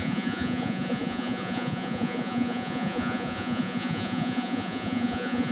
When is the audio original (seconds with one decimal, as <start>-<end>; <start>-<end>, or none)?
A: none